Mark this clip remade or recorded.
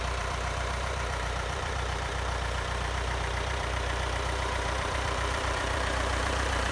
remade